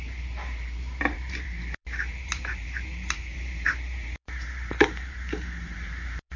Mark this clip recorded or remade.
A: remade